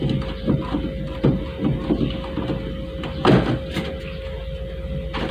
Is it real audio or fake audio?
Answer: real